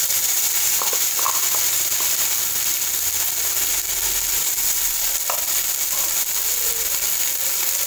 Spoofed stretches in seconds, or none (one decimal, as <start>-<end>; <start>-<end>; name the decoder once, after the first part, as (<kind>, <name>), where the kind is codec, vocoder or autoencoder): none